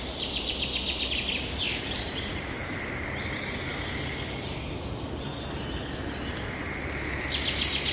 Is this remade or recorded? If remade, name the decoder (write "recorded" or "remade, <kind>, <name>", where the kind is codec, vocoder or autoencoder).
recorded